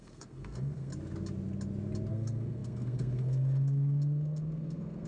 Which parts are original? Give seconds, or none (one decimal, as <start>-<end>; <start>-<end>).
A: 0.9-2.1